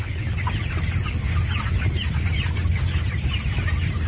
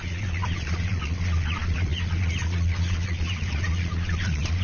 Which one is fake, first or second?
second